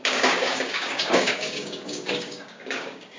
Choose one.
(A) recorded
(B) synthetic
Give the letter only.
B